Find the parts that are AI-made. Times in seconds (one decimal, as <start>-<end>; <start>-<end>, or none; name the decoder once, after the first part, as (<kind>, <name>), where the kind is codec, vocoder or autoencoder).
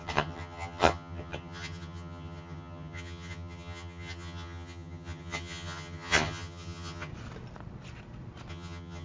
0.0-7.1 (vocoder, HiFi-GAN); 8.5-9.0